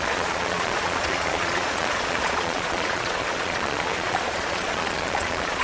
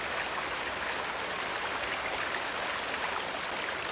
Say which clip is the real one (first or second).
second